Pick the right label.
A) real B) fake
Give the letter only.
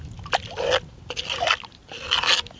A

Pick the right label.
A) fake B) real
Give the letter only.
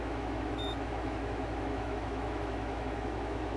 A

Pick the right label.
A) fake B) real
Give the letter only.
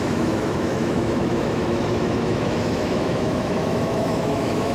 A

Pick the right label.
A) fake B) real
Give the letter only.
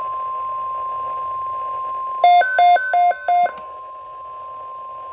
B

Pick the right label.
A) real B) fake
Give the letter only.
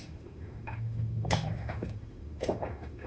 B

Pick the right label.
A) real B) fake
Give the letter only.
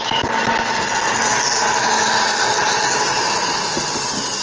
A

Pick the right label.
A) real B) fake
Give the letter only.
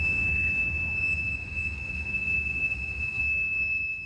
B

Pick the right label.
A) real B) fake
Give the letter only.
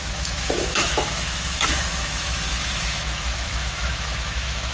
B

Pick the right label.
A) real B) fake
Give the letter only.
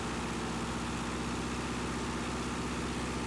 A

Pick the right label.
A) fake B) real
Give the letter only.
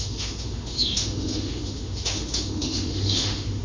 A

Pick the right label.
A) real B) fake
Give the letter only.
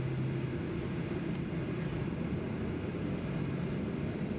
A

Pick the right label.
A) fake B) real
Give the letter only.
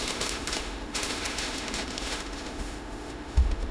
A